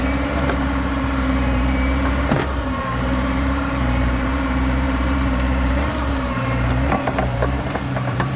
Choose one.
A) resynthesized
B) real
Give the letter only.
A